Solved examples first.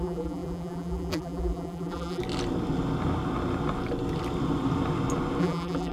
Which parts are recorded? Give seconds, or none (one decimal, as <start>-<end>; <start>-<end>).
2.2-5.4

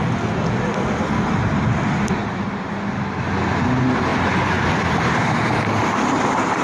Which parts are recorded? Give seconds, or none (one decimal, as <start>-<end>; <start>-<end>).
0.0-2.2; 2.7-6.6

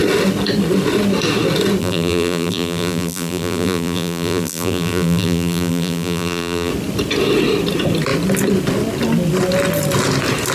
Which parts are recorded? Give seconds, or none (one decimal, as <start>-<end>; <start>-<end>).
0.0-1.8; 6.7-10.5